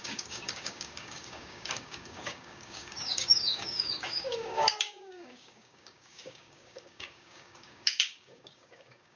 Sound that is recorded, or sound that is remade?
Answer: remade